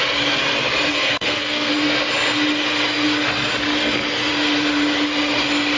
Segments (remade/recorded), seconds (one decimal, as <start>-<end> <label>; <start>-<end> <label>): 0.0-0.9 recorded; 0.9-1.7 remade; 1.7-5.8 recorded